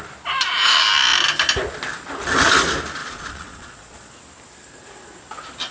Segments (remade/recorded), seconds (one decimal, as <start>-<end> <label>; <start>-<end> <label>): 0.0-3.0 recorded; 3.0-4.1 remade; 4.1-5.7 recorded